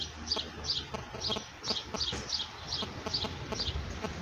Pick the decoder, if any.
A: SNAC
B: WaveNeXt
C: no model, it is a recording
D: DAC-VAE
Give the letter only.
C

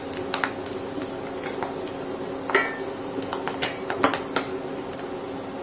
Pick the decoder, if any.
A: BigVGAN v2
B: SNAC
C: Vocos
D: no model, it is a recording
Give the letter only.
D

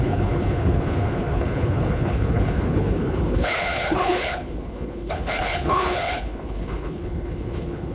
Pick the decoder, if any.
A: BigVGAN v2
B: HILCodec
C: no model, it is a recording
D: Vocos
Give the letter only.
B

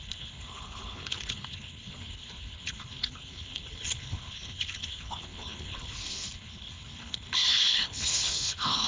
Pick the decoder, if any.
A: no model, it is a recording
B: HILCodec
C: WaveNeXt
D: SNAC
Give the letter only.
B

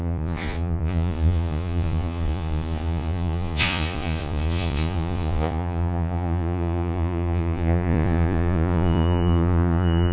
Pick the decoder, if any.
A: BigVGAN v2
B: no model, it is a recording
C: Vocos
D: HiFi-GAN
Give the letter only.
C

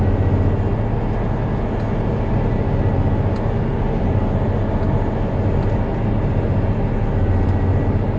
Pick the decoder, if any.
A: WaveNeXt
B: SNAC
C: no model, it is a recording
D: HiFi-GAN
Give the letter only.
C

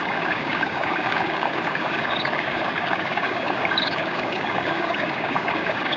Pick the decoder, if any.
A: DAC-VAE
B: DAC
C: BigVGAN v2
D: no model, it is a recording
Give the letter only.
B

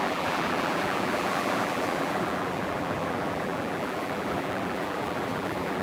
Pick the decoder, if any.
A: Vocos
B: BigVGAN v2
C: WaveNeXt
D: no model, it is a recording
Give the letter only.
B